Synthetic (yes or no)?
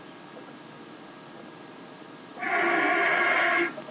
no